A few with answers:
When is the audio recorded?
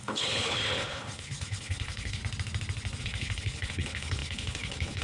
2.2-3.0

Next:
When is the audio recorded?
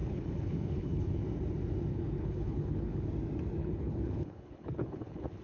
1.2-1.9; 3.1-3.6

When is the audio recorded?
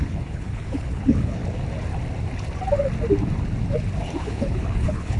1.4-4.2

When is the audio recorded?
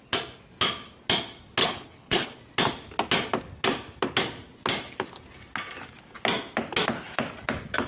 0.0-1.6; 2.4-7.9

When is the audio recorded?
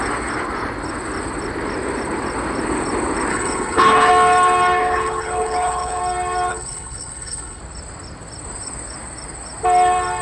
0.0-3.3; 4.1-4.8; 6.0-6.5; 7.6-10.2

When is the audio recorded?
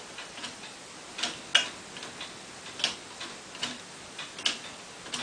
0.0-5.2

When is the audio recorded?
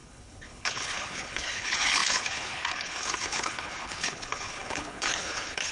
none